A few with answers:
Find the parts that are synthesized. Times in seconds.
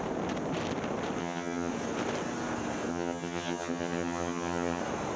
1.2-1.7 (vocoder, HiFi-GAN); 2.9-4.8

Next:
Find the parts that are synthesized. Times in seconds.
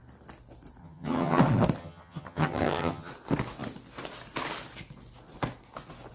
0.8-1.4 (vocoder, HiFi-GAN); 1.8-3.1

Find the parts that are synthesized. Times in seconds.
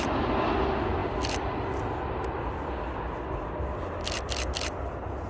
none